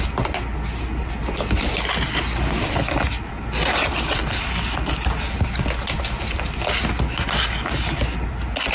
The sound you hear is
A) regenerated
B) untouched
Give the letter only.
B